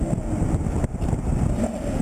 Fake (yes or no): no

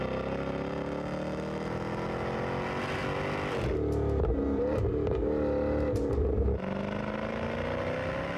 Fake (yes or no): no